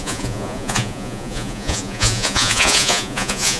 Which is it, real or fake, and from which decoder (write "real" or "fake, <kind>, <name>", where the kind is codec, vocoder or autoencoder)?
fake, vocoder, Vocos